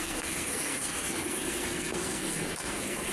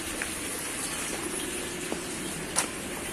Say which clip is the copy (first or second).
first